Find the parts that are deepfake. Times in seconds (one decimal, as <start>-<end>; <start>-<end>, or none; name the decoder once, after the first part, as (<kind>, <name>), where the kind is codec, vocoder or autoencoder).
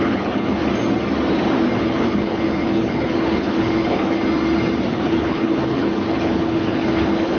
0.0-0.6 (codec, HILCodec); 1.8-4.2; 4.9-7.4